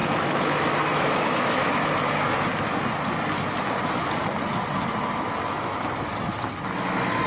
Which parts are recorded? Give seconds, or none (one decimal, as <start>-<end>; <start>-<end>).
1.8-7.3